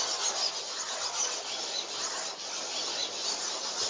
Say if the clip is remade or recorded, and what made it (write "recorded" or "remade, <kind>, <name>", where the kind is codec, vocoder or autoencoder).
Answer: recorded